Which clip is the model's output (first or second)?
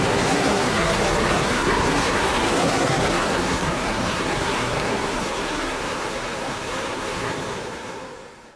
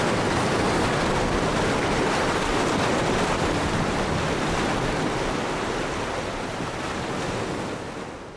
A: first